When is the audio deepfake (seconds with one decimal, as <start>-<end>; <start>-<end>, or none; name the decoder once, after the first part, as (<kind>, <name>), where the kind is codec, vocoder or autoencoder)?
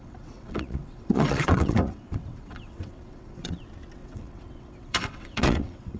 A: 0.0-3.6 (vocoder, WaveNeXt); 4.0-6.0